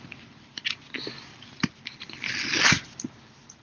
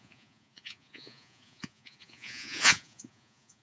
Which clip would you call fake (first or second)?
second